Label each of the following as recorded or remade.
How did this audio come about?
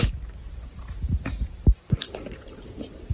remade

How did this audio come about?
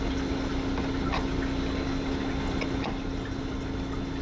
recorded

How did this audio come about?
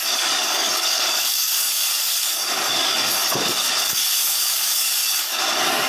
remade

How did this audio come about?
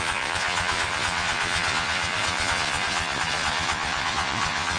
remade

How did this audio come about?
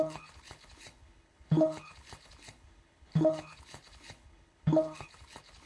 remade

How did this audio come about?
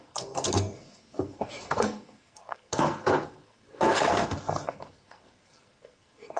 remade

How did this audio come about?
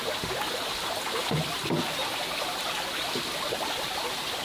recorded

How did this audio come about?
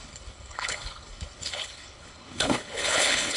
remade